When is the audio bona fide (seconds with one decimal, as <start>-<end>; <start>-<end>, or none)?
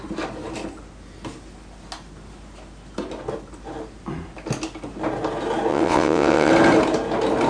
0.0-5.7; 6.5-7.5